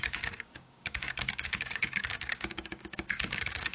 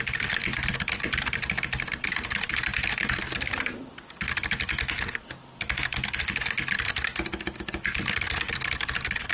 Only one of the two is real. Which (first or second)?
second